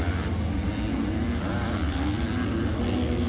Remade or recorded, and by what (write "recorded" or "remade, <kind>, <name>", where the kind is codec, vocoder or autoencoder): recorded